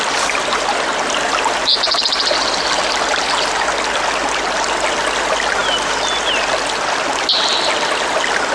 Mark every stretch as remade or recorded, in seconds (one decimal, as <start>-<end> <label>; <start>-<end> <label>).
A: 0.0-8.5 recorded